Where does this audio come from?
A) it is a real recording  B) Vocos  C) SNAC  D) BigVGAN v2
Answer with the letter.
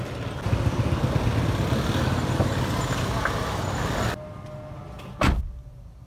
A